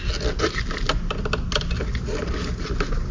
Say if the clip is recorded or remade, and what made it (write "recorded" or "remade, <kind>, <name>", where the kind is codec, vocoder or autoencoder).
recorded